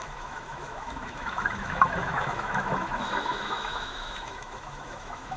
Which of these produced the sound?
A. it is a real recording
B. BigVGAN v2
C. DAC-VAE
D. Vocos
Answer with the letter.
C